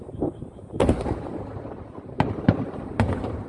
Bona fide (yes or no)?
no